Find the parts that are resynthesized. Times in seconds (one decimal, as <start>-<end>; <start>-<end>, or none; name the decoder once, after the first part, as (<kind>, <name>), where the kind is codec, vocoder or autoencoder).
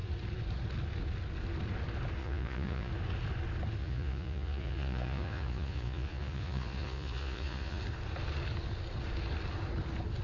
2.2-2.9 (vocoder, Vocos); 3.8-7.8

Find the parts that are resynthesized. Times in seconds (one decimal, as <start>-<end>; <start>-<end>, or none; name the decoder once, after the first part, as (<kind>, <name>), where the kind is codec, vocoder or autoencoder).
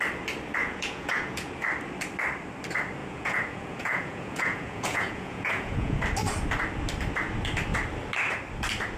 0.6-1.5 (vocoder, Vocos); 3.0-6.0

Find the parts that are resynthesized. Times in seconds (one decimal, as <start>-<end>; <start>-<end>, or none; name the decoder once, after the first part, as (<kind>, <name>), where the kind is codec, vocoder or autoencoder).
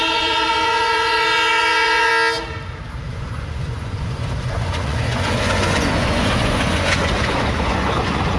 0.0-2.1 (vocoder, Vocos); 3.1-8.4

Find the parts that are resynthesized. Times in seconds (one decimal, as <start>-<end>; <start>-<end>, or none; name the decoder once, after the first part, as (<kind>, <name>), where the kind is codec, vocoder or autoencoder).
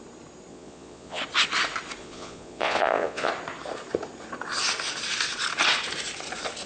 0.5-1.2 (vocoder, Vocos); 2.0-3.3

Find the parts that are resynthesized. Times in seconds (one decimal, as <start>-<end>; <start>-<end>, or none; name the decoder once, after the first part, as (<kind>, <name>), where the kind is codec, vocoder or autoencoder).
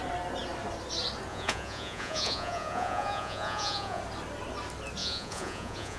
1.3-4.0 (vocoder, Vocos); 5.0-6.0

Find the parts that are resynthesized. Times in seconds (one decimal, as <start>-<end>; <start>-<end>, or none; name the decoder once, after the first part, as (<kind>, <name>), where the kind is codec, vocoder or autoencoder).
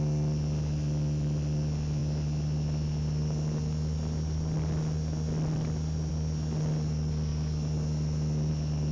none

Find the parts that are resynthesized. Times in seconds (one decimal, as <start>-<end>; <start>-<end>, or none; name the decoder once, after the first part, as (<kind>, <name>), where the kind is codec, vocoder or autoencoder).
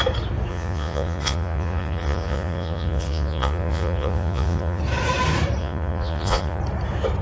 0.5-4.8 (vocoder, Vocos); 5.6-6.6